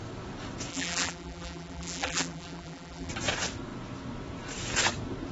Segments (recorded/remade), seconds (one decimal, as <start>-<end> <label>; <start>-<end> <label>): 0.0-0.7 recorded; 0.7-3.1 remade; 3.1-5.3 recorded